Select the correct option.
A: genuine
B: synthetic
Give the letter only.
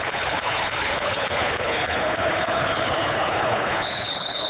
B